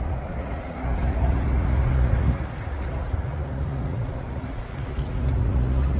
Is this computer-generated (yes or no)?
yes